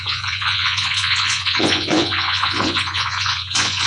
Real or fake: fake